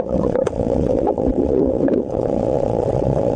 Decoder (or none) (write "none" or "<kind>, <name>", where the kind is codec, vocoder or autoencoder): vocoder, WaveNeXt